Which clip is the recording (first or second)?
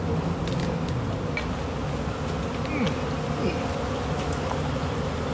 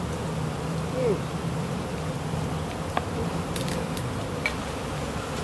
first